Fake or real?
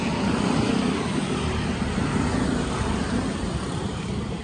real